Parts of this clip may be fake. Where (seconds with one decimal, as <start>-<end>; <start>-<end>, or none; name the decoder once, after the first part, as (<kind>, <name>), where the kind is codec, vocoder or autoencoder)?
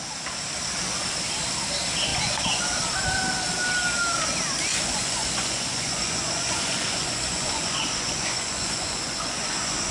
2.1-2.6 (vocoder, Vocos); 4.7-9.9